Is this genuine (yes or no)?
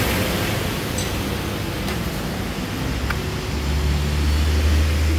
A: yes